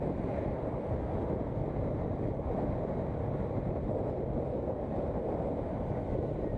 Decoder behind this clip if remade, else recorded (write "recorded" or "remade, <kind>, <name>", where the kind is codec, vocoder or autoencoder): recorded